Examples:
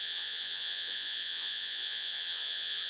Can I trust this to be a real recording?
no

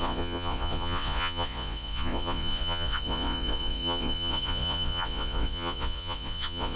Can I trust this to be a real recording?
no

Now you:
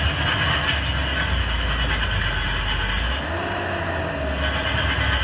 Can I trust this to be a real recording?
yes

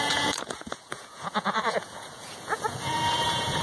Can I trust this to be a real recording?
no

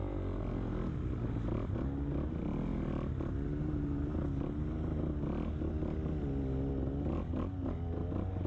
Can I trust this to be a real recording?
yes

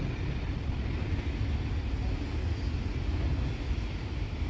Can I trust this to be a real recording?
yes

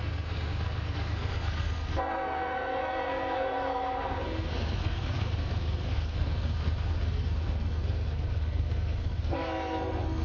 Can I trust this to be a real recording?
no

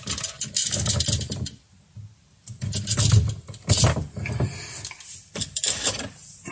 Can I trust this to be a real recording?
yes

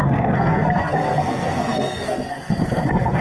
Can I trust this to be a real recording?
no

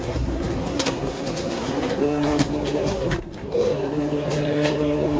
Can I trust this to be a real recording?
no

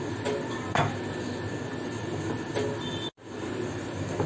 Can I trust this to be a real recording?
yes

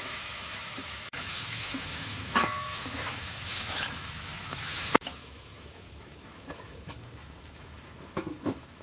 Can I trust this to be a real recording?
no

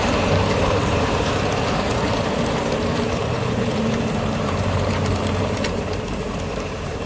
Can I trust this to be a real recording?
no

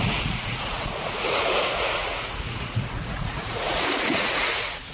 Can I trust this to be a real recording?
no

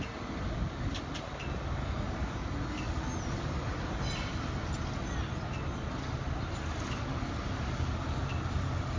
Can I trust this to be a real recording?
yes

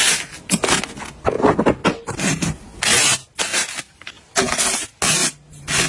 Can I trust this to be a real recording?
yes